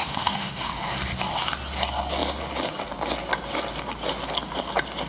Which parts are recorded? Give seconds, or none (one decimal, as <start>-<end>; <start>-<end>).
0.8-5.1